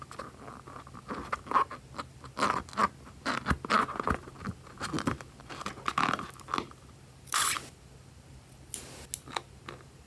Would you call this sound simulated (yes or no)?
no